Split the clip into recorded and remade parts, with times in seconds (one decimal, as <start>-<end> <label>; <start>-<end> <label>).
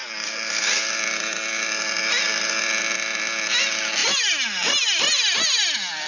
0.0-6.1 recorded